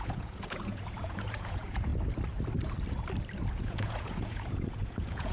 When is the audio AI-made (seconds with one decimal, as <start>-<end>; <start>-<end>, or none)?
0.0-1.9; 3.5-5.3

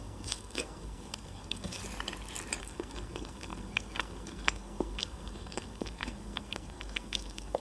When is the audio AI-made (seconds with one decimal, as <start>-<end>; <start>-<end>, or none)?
0.0-1.8; 2.6-7.6

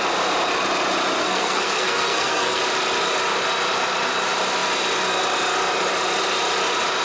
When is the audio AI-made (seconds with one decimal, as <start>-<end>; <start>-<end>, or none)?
1.2-2.6

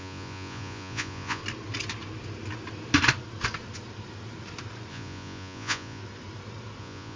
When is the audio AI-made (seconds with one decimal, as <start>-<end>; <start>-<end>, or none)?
0.0-1.4; 4.9-6.0; 6.8-7.2